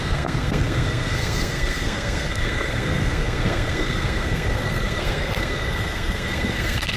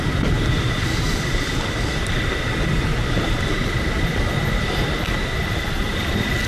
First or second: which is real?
second